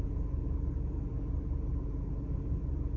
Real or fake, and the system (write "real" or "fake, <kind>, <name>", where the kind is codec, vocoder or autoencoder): real